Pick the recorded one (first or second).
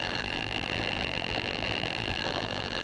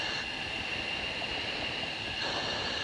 second